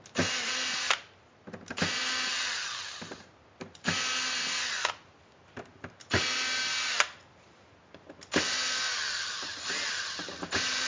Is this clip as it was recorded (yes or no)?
yes